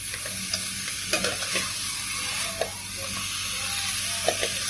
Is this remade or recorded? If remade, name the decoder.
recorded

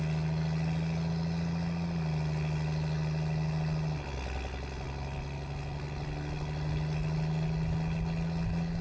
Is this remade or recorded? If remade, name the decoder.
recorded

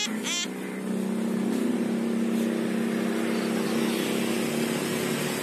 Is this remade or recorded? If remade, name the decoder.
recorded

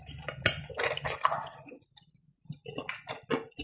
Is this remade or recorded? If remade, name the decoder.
recorded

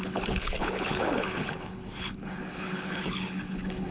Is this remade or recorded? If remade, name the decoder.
remade, codec, HILCodec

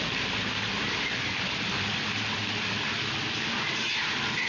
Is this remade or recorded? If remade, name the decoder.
recorded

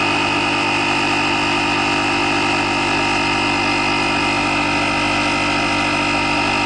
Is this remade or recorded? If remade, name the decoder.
recorded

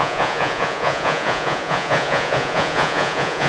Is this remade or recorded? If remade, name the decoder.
remade, vocoder, Vocos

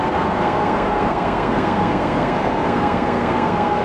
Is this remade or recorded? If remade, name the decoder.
remade, codec, SNAC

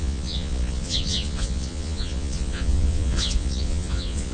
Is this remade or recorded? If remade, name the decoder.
remade, vocoder, Vocos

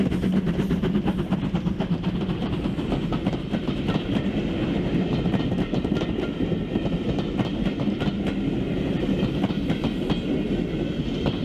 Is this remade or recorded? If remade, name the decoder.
recorded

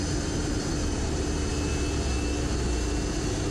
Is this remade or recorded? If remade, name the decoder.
recorded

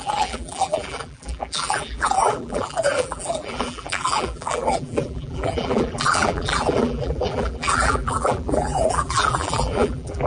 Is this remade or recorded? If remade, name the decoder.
remade, vocoder, BigVGAN v2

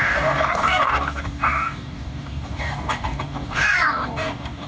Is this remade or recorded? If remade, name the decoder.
remade, codec, DAC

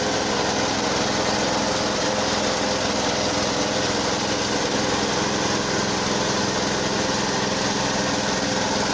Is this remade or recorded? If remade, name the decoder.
recorded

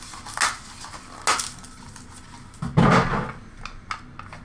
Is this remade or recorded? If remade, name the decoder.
recorded